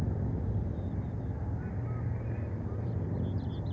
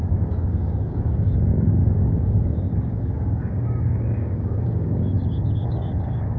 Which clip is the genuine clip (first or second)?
first